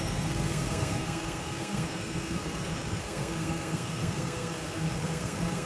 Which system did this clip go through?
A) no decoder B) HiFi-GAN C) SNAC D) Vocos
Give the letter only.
C